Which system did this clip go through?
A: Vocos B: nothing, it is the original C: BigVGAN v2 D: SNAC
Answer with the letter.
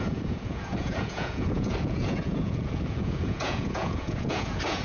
A